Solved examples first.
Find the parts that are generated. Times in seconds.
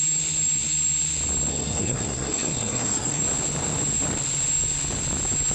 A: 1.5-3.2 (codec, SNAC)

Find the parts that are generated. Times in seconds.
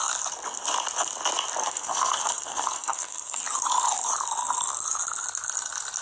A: 1.6-3.4 (codec, SNAC)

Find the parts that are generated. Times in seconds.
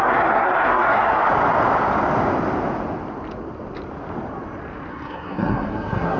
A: 0.0-1.2 (codec, SNAC); 4.9-6.2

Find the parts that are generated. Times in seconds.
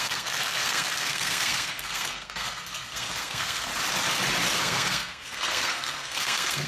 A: 0.0-3.7 (codec, SNAC); 4.6-6.7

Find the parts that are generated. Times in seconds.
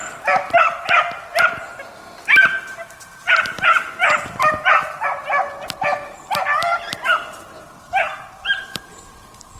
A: none